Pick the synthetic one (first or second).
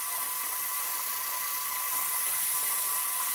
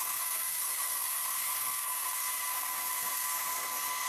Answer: second